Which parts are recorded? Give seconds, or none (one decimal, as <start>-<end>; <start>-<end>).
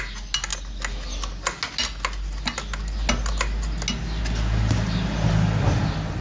0.0-6.2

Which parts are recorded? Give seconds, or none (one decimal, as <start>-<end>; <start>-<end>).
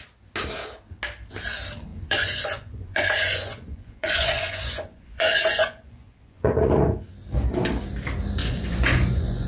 0.0-1.9; 7.0-8.4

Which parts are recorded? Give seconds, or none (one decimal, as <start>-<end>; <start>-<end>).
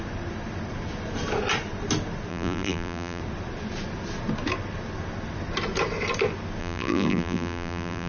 0.0-2.3; 3.2-6.6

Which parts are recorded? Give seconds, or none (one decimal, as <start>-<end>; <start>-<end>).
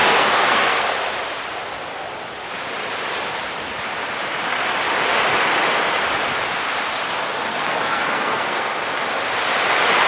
0.9-7.5; 8.8-10.1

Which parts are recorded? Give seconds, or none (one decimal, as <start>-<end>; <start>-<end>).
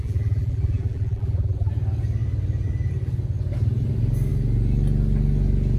1.7-5.8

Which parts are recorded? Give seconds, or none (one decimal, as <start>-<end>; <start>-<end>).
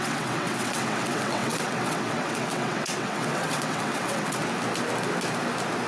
4.4-5.9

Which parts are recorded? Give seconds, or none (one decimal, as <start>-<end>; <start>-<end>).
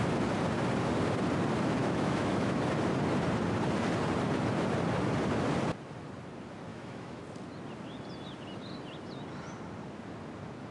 0.0-1.8; 2.6-6.7; 7.2-10.7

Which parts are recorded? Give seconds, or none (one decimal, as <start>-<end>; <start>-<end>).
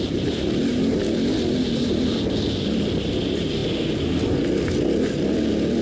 0.0-5.8